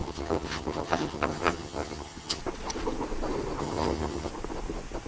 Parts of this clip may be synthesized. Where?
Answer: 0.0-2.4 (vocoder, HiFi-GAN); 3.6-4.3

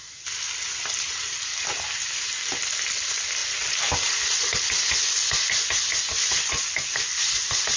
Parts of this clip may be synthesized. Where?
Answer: none

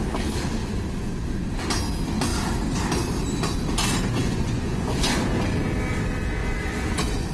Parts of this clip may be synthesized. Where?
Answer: 0.6-1.5 (vocoder, Vocos); 4.2-5.2; 6.4-7.3

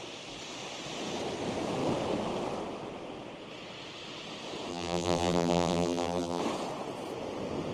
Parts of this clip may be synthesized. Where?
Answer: 4.7-6.4 (vocoder, BigVGAN v2)